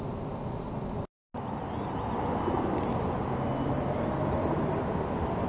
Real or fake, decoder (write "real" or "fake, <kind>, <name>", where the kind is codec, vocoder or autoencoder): real